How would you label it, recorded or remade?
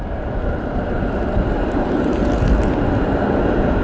recorded